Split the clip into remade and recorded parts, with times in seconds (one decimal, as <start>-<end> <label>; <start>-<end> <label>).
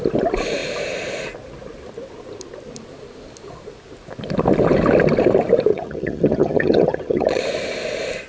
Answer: 0.0-5.7 recorded; 5.7-7.4 remade; 7.4-8.3 recorded